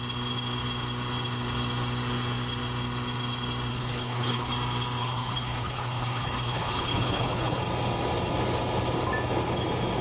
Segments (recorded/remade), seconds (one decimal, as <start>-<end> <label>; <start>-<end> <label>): 0.0-3.7 recorded; 3.7-4.5 remade; 4.5-5.0 recorded; 5.0-7.6 remade; 7.6-10.0 recorded